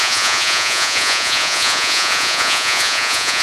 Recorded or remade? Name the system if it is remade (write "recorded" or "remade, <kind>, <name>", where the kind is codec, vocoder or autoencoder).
remade, vocoder, Vocos